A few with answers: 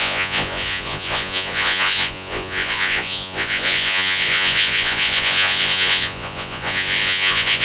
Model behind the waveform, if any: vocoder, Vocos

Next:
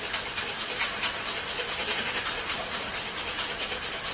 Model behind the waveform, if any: none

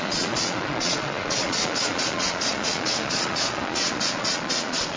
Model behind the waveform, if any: vocoder, Vocos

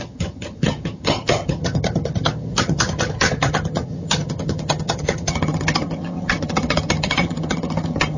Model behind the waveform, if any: vocoder, HiFi-GAN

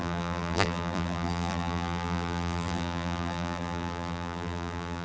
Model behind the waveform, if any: vocoder, BigVGAN v2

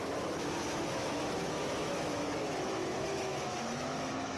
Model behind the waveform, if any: autoencoder, DAC-VAE